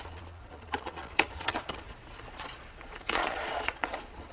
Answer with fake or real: fake